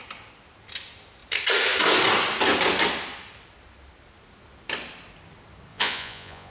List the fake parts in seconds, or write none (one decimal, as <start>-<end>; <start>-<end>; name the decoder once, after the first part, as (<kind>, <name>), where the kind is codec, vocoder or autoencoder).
5.7-6.5 (vocoder, Vocos)